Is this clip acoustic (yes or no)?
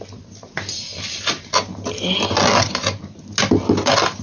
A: yes